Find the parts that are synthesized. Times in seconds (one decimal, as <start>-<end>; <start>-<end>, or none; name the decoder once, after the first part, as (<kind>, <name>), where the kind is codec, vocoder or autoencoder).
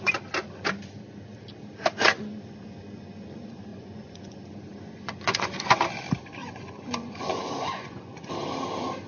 3.7-4.3 (vocoder, Vocos); 4.7-5.8; 6.4-8.3